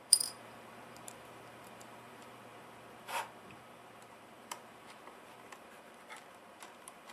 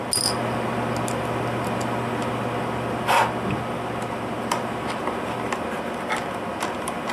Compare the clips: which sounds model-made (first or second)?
first